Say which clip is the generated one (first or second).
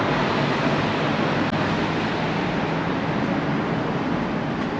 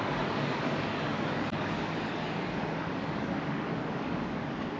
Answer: second